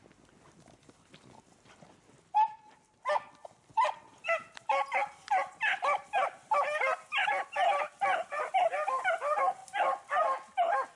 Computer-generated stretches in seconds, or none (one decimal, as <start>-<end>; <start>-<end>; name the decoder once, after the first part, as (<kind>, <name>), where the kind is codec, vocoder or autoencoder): 5.3-6.5 (vocoder, BigVGAN v2); 7.3-7.9